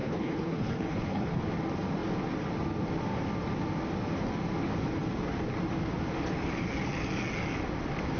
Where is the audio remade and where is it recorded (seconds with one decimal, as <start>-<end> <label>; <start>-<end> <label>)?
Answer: 0.0-1.4 remade; 1.4-8.2 recorded